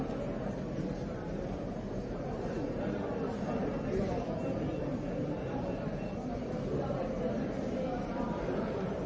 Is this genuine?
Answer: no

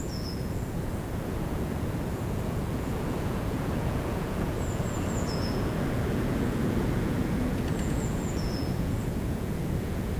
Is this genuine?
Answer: no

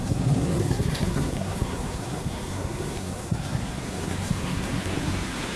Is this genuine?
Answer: no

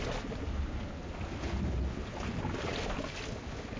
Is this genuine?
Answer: yes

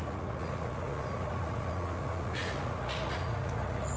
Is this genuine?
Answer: no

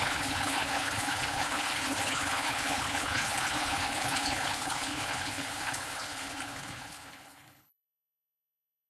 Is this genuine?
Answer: no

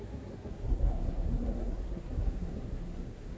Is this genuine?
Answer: no